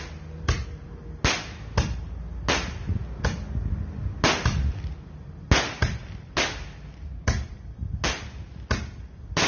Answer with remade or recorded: recorded